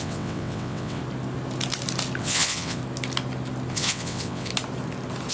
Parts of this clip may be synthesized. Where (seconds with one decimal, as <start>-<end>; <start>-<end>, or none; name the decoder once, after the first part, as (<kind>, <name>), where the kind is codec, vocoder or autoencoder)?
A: 0.0-1.0 (vocoder, WaveNeXt); 2.2-2.8; 3.7-4.5